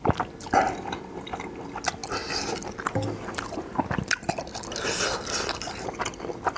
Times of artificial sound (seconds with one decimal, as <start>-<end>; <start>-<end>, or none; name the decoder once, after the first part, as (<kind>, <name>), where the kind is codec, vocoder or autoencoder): none